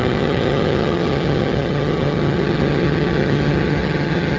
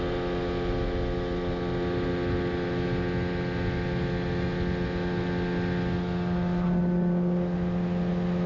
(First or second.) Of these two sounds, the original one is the second